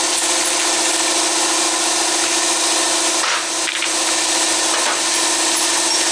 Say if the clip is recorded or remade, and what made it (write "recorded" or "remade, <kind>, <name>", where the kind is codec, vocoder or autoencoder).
recorded